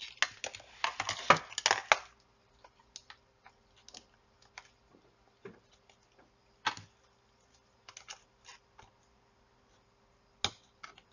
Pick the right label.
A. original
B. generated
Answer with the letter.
A